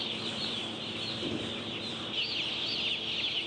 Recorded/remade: remade